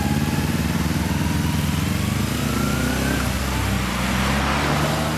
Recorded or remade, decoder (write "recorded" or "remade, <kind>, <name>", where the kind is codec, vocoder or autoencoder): recorded